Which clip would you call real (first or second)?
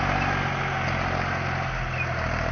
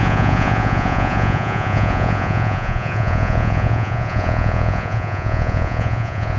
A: first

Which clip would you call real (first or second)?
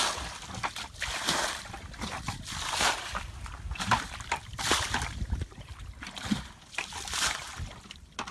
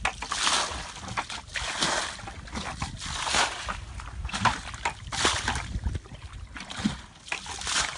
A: second